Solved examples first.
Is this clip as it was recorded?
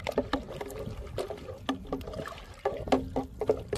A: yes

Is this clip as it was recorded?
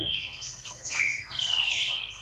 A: no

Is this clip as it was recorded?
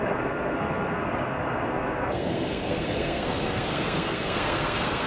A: no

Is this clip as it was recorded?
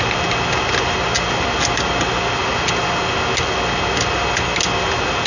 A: yes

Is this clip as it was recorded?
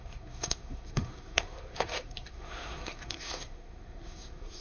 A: no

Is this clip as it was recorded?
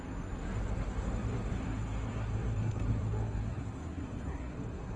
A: no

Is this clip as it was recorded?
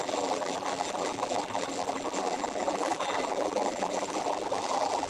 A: no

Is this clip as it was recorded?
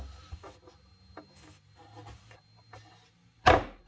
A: yes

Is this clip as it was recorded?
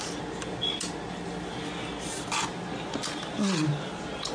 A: yes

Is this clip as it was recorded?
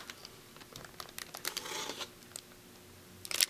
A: yes